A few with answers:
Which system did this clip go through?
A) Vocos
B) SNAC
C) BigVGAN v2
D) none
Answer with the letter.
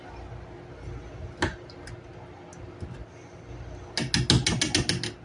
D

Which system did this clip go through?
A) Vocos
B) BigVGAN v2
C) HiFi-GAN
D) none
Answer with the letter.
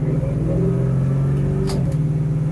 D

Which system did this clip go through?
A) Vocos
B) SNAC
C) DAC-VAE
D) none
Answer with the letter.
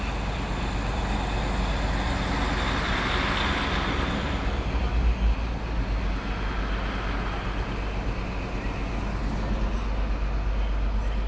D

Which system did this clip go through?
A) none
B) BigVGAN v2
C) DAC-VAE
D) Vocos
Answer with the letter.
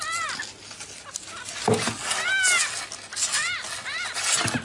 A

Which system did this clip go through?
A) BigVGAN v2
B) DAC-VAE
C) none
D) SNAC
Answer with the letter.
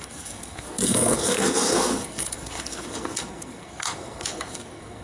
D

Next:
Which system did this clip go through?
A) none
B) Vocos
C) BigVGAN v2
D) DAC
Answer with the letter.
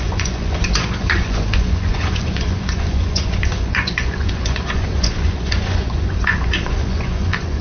B